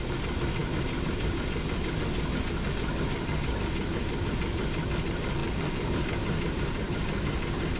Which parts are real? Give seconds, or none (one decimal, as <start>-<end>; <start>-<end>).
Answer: 0.0-7.8